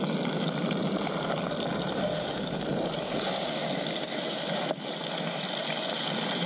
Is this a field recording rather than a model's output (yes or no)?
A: yes